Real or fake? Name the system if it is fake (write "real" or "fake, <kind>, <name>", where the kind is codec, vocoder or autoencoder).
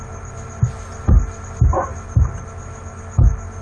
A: real